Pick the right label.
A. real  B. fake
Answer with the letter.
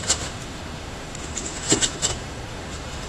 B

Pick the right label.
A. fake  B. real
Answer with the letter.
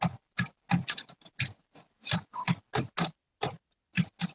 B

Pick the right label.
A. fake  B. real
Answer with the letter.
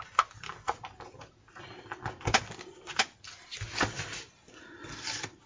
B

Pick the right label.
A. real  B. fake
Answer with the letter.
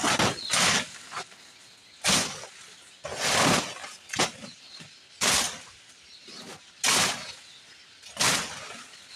A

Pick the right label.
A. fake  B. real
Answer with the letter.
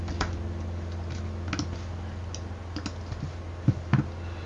B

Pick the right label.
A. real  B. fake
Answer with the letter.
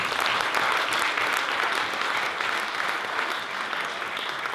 A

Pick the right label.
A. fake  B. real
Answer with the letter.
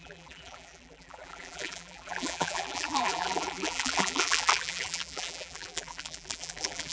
A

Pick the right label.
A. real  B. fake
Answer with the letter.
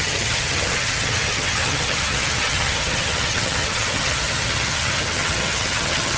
B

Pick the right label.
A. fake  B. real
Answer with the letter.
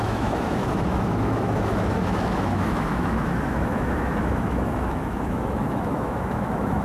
A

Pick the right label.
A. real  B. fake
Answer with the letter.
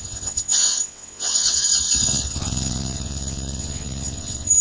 B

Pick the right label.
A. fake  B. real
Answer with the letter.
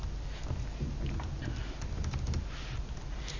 B